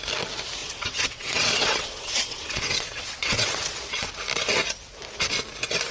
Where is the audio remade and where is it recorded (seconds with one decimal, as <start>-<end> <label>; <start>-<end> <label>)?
0.0-0.6 recorded; 0.6-4.1 remade; 4.1-5.9 recorded